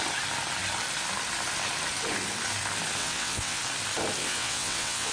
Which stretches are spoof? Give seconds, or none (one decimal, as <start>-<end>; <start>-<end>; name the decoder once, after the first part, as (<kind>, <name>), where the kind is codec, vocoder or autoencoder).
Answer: 3.0-3.6 (vocoder, WaveNeXt); 4.2-5.1

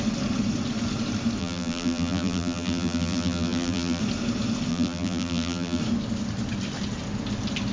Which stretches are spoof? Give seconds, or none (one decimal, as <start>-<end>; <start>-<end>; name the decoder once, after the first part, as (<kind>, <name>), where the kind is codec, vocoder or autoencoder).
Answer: 1.4-4.0 (vocoder, BigVGAN v2); 4.7-5.8

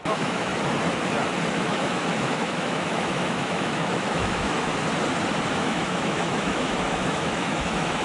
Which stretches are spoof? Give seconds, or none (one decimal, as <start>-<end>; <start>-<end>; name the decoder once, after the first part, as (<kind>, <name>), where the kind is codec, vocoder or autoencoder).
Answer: 0.0-0.5 (autoencoder, DAC-VAE); 1.5-4.7; 5.5-8.0

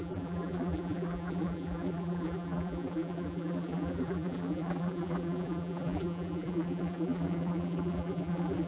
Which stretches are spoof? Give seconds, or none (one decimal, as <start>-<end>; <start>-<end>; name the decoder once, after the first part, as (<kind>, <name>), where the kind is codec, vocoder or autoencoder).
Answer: 0.0-8.7 (vocoder, BigVGAN v2)